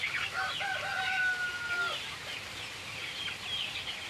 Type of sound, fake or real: real